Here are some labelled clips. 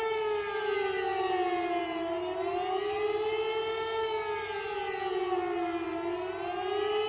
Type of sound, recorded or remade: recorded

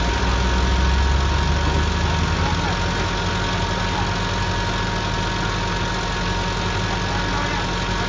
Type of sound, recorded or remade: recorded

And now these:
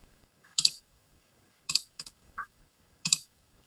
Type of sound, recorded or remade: remade